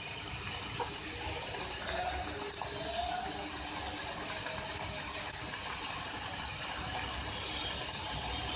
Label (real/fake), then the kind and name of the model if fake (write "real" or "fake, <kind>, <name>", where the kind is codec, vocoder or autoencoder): real